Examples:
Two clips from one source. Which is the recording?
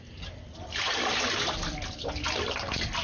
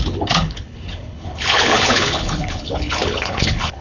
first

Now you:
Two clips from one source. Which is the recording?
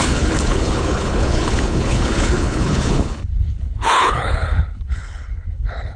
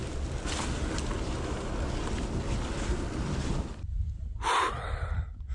second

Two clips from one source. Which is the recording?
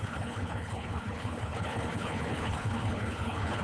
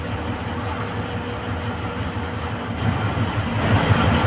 second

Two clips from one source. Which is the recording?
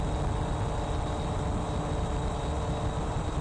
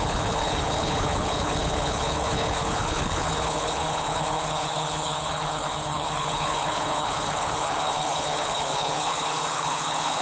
first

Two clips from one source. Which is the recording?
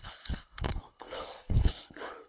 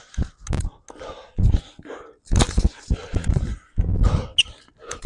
second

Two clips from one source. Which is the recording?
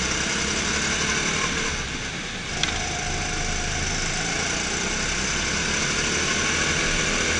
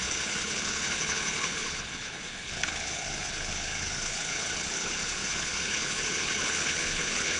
first